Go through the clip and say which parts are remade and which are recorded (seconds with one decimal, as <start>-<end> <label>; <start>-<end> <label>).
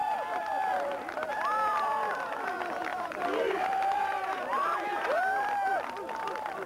0.0-2.9 recorded; 2.9-5.2 remade; 5.2-6.7 recorded